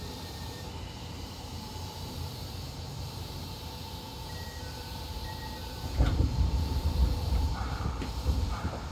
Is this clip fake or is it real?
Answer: fake